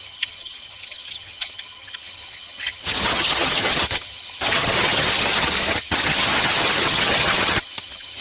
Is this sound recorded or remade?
remade